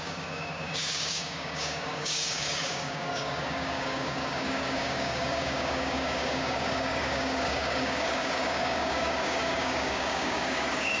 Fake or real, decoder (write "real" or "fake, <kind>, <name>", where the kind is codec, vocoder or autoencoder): fake, codec, DAC